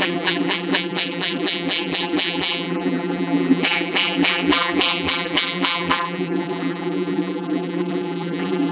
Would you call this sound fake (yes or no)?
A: yes